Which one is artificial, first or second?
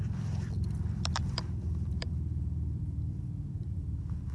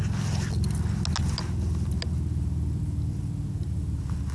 first